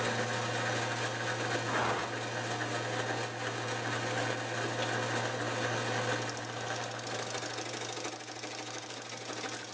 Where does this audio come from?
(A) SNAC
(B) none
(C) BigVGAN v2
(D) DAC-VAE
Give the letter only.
B